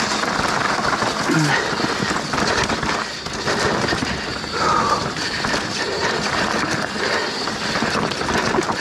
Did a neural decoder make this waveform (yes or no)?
no